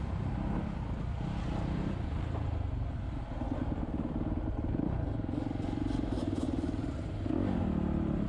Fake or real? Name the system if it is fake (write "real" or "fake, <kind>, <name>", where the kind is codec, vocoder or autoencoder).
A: real